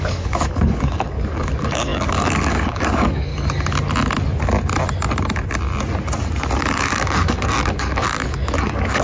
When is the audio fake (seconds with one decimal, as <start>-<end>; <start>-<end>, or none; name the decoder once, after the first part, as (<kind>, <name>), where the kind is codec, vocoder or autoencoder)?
0.0-3.3 (codec, DAC); 6.6-9.0